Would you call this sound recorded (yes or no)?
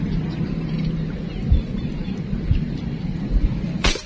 yes